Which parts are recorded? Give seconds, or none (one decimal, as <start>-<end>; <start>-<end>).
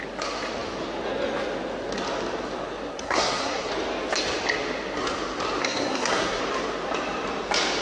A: 0.0-2.9; 3.7-5.6; 6.4-7.8